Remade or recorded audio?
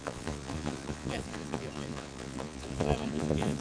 remade